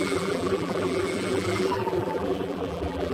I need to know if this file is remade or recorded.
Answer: remade